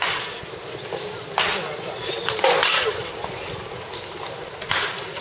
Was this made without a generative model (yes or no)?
yes